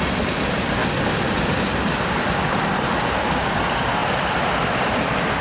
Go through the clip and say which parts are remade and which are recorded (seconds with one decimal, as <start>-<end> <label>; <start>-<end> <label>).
0.0-0.8 remade; 0.8-3.5 recorded; 3.5-5.4 remade